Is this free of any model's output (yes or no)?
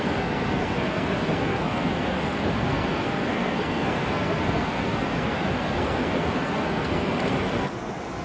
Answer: no